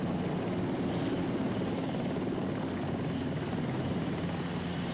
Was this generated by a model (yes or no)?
no